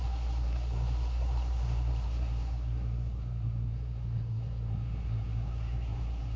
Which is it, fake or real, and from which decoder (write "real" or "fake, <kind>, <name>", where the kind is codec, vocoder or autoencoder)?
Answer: fake, codec, SNAC